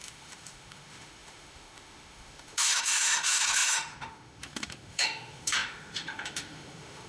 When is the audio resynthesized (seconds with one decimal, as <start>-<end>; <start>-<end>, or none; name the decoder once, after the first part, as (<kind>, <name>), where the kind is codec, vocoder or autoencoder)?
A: 0.0-7.1 (autoencoder, DAC-VAE)